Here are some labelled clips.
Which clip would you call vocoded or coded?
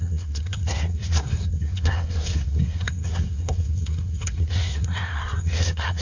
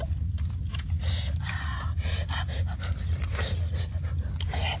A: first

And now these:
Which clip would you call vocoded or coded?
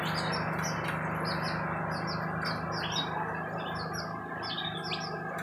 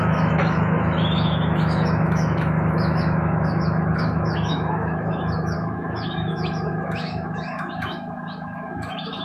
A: second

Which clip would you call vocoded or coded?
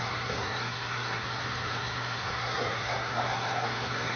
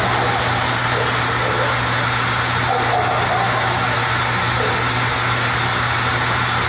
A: first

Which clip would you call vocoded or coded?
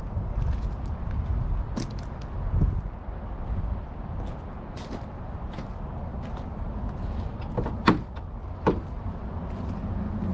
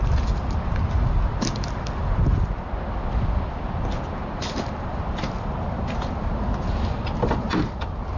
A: second